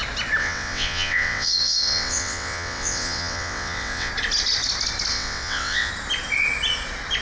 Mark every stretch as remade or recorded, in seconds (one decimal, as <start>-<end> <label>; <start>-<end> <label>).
0.0-0.4 recorded; 0.4-4.1 remade; 4.1-5.1 recorded; 5.1-5.9 remade; 5.9-7.2 recorded